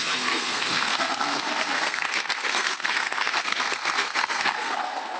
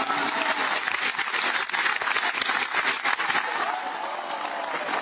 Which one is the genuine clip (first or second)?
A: second